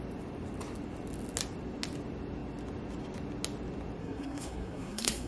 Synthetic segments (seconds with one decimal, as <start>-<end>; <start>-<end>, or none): 4.0-5.3